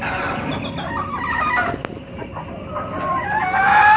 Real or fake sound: real